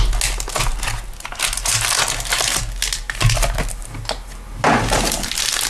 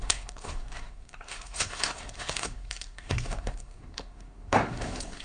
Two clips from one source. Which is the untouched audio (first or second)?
first